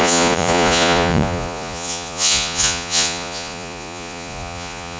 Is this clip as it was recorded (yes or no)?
no